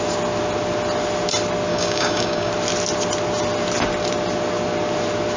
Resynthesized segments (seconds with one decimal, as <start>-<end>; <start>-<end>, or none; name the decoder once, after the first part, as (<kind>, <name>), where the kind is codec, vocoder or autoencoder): 1.7-2.5 (codec, DAC)